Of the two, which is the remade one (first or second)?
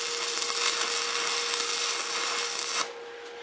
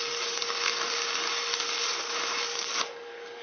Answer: second